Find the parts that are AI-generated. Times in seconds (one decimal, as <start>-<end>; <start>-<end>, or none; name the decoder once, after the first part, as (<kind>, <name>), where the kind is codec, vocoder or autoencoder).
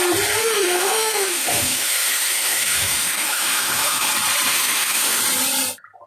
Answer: 0.4-4.1 (autoencoder, DAC-VAE); 4.5-5.2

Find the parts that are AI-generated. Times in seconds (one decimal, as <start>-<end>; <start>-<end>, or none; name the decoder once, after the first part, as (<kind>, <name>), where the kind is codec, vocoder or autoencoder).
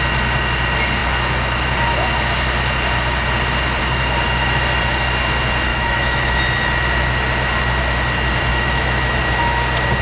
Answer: 5.7-6.4 (autoencoder, DAC-VAE); 8.5-9.2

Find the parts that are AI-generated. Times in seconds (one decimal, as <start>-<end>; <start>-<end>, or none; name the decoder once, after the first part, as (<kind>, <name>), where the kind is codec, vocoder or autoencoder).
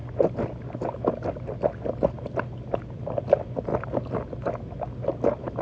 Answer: none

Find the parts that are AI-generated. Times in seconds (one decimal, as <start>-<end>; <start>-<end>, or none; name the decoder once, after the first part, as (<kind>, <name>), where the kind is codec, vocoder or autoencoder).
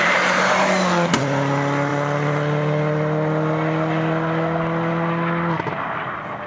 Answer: none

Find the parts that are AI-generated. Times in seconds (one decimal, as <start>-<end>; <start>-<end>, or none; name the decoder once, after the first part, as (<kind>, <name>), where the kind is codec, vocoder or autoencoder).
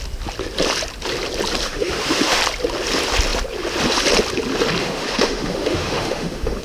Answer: 1.6-2.4 (autoencoder, DAC-VAE); 4.8-6.6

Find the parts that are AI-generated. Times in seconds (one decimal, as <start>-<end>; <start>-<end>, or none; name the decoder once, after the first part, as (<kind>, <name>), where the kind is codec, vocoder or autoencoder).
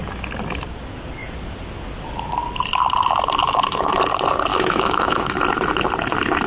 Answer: 3.4-4.0 (autoencoder, DAC-VAE); 4.5-5.3